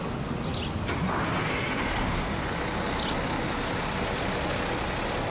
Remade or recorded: recorded